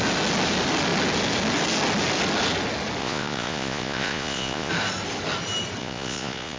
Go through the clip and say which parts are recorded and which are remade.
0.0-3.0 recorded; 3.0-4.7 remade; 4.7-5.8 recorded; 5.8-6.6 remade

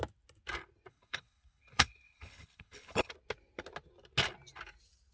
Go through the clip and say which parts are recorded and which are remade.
0.0-0.9 recorded; 0.9-3.1 remade; 3.1-5.1 recorded

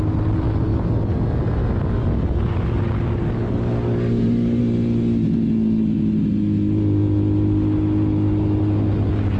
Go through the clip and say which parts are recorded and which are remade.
0.0-3.2 recorded; 3.2-4.6 remade; 4.6-9.4 recorded

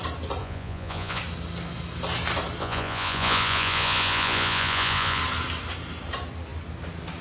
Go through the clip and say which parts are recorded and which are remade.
0.0-0.4 recorded; 0.4-1.2 remade; 1.2-2.6 recorded; 2.6-5.2 remade; 5.2-7.2 recorded

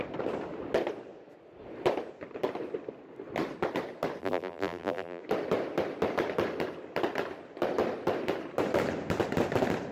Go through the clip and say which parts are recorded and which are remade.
0.0-4.2 recorded; 4.2-5.2 remade; 5.2-9.9 recorded

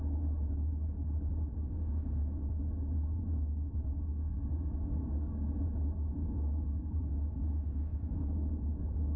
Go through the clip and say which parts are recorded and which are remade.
0.0-4.1 recorded; 4.1-5.5 remade; 5.5-6.2 recorded; 6.2-7.0 remade; 7.0-7.9 recorded; 7.9-9.2 remade

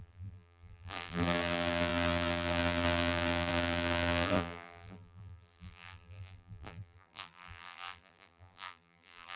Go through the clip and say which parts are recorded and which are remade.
0.0-9.4 remade

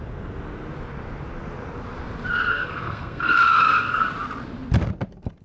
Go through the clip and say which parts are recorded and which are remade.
0.0-2.5 recorded; 2.5-4.1 remade; 4.1-5.4 recorded